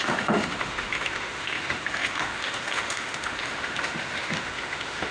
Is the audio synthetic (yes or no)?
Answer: yes